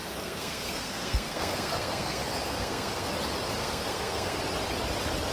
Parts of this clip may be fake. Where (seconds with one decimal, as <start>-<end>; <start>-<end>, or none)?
0.0-3.1; 3.6-4.4